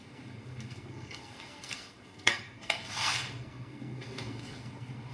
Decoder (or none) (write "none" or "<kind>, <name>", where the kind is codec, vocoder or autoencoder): codec, SNAC